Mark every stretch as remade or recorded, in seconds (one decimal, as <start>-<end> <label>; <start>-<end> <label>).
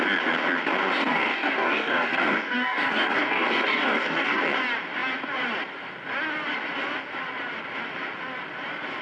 0.0-1.0 recorded; 1.0-4.4 remade; 4.4-9.0 recorded